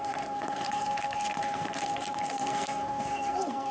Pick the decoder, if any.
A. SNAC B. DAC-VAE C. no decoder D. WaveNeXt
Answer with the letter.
A